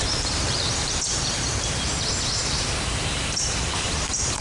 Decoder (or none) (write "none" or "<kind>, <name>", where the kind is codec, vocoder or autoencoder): vocoder, BigVGAN v2